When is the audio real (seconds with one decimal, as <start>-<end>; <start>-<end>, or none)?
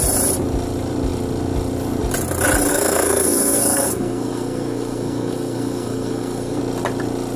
0.0-2.7; 6.6-7.4